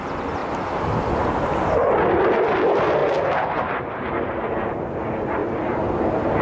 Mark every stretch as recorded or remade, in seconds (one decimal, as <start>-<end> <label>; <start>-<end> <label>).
0.0-6.4 recorded